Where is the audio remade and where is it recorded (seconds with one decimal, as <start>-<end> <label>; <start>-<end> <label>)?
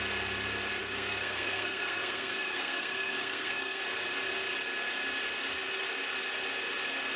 0.0-0.8 recorded; 0.8-3.8 remade; 3.8-7.2 recorded